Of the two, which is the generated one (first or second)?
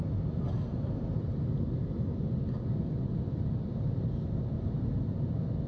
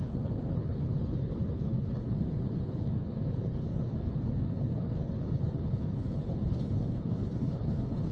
second